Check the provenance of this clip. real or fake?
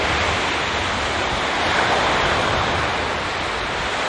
real